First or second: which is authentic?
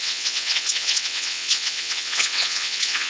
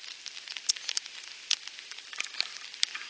second